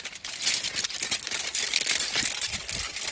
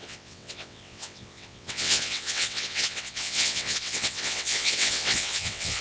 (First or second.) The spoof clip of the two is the second